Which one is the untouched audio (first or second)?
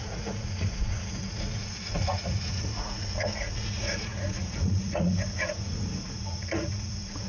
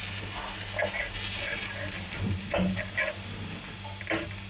second